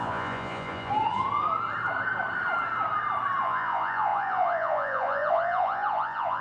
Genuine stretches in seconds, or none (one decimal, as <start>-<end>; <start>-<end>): 0.9-3.4